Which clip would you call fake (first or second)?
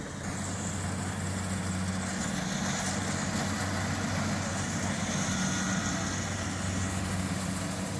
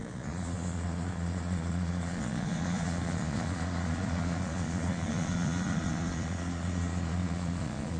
second